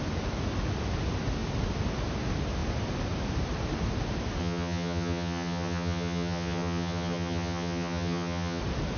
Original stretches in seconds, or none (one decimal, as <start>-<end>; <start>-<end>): 0.0-4.4; 8.6-9.0